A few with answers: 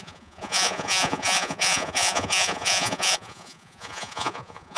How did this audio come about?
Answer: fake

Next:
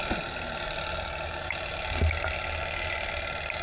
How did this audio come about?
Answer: real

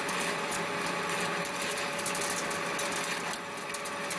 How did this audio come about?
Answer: real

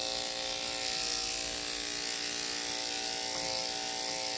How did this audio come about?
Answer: real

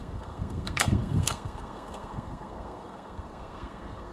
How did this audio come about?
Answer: fake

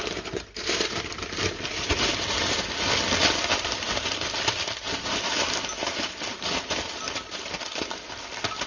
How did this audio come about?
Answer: fake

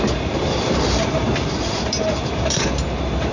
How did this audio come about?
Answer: fake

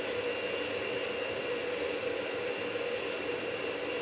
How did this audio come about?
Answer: real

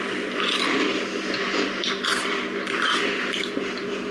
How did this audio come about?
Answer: real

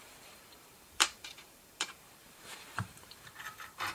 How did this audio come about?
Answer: fake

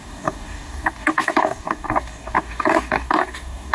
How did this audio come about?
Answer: fake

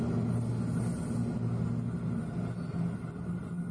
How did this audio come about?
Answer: real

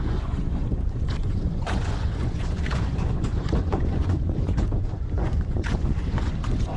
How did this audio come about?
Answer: fake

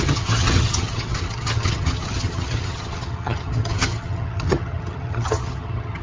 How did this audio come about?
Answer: fake